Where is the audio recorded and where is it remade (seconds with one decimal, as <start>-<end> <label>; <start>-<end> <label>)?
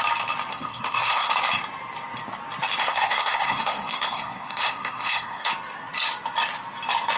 0.0-0.5 recorded; 0.5-1.3 remade; 1.3-2.8 recorded; 2.8-5.5 remade; 5.5-7.2 recorded